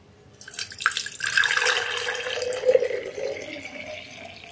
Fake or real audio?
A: real